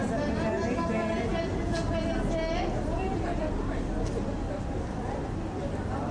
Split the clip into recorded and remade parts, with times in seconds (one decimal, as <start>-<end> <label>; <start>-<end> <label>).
0.0-6.1 recorded